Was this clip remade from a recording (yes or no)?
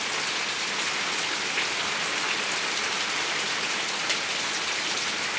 no